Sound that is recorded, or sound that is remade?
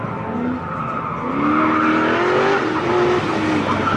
recorded